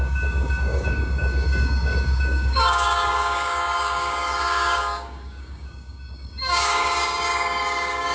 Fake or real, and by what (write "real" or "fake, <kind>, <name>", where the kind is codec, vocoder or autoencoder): fake, codec, DAC